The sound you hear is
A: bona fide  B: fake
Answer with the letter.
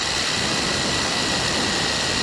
A